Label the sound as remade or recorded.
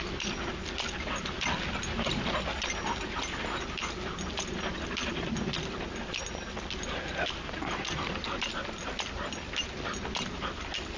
recorded